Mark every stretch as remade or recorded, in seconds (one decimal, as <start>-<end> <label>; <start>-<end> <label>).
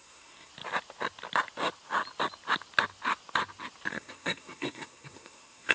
0.0-0.5 remade; 0.5-3.9 recorded; 3.9-5.7 remade